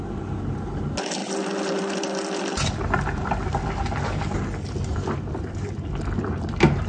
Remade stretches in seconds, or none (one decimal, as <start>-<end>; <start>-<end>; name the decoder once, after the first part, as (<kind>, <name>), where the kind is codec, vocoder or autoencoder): 1.2-4.2 (vocoder, BigVGAN v2)